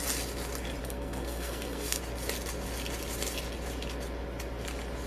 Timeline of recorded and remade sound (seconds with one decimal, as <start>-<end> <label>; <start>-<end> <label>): 0.0-0.8 recorded; 0.8-2.0 remade; 2.0-5.1 recorded